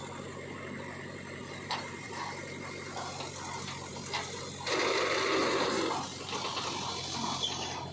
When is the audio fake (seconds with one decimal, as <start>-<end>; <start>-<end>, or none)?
1.4-2.1